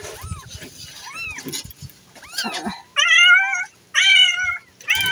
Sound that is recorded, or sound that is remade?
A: recorded